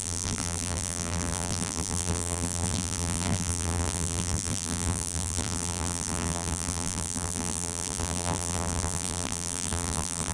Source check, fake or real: fake